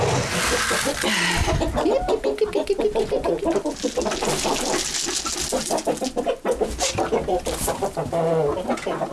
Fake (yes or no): no